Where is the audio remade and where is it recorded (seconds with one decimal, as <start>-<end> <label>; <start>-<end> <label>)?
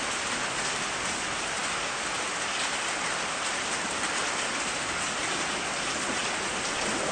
0.0-7.1 recorded